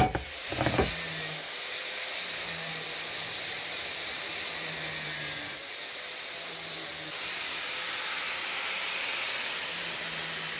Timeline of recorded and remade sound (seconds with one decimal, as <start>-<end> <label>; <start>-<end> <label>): 0.0-0.8 remade; 0.8-3.5 recorded; 3.5-4.3 remade; 4.3-8.4 recorded; 8.4-8.9 remade; 8.9-10.6 recorded